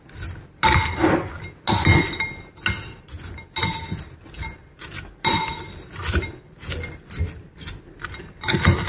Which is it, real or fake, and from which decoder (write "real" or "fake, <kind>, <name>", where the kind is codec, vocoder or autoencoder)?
real